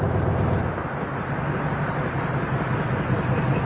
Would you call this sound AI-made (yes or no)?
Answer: no